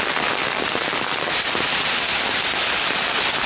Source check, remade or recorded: recorded